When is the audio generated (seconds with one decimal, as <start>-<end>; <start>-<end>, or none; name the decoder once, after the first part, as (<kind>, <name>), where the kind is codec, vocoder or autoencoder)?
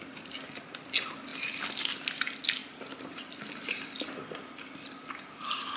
2.6-3.2 (vocoder, BigVGAN v2)